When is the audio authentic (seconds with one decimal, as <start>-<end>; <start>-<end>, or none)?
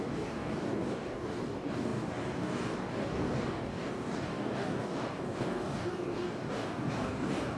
none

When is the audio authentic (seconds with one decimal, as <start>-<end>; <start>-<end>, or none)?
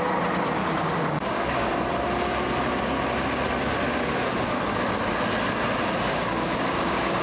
0.0-0.6; 1.7-6.1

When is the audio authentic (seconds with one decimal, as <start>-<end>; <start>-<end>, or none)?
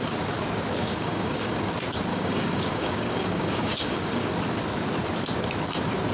0.0-0.8; 1.6-2.1; 4.3-6.1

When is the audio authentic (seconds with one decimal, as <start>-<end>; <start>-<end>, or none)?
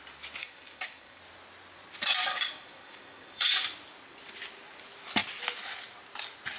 0.0-0.4; 1.2-2.2; 3.6-6.6